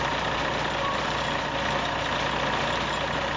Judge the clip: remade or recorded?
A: recorded